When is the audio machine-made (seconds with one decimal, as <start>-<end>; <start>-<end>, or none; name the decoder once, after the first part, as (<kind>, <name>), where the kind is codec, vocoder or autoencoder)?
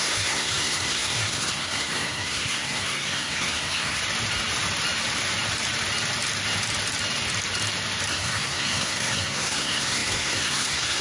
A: 0.0-4.0 (codec, SNAC); 8.1-11.0